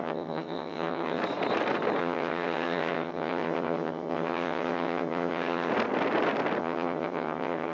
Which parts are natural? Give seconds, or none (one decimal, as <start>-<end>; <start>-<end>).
1.2-2.0; 5.7-6.6